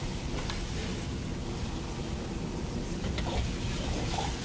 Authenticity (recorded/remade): recorded